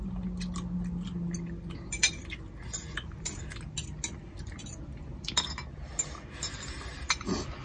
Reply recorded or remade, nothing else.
recorded